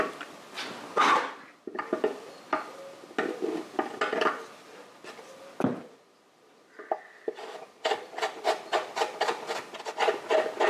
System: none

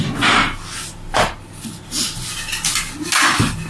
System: none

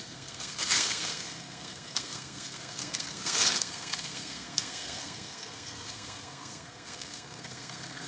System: codec, SNAC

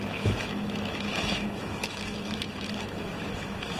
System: autoencoder, DAC-VAE